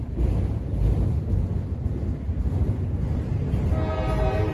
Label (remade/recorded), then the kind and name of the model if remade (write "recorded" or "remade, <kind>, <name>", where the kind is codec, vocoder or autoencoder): recorded